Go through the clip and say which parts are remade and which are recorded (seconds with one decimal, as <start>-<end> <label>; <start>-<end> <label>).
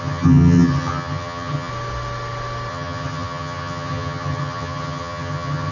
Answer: 0.0-1.7 remade; 1.7-2.7 recorded; 2.7-5.7 remade